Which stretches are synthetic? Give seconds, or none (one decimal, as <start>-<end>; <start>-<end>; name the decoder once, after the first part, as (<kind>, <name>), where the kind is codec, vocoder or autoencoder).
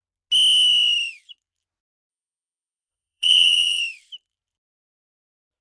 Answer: 2.1-3.8 (vocoder, WaveNeXt)